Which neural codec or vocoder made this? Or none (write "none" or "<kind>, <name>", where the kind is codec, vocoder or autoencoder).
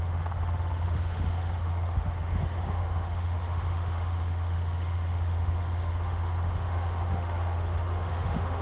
autoencoder, DAC-VAE